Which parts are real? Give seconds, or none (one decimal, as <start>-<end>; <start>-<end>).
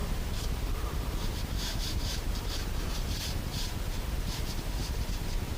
3.4-4.8